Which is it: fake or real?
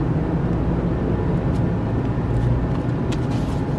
real